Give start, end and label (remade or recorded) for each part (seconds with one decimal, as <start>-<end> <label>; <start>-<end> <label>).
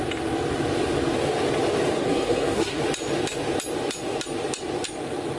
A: 0.0-2.0 recorded; 2.0-2.8 remade; 2.8-5.4 recorded